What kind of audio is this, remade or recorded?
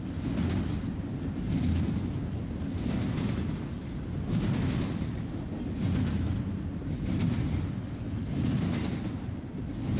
recorded